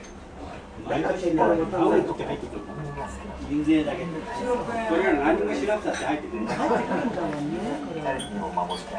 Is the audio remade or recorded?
recorded